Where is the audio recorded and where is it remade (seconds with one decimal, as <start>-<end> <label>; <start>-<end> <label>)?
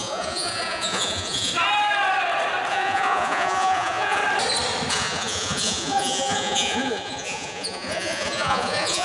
0.0-1.5 remade; 1.5-2.7 recorded; 2.7-4.2 remade; 4.2-4.9 recorded; 4.9-9.0 remade